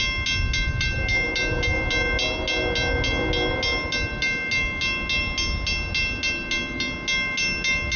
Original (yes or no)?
yes